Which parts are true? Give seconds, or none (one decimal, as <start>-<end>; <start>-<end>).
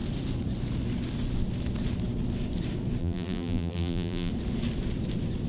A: 0.0-3.0; 4.3-5.5